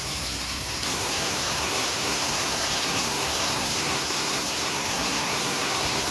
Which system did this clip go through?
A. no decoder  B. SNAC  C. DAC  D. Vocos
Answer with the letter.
B